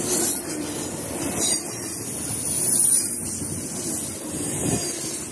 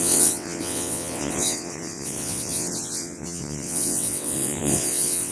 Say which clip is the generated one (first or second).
second